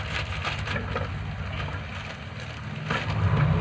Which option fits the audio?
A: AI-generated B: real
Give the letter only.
B